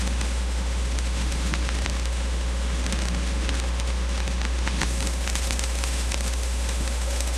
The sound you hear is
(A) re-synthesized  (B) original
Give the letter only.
A